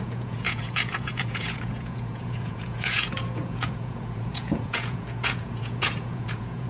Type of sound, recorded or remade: remade